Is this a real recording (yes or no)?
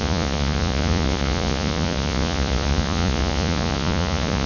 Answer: no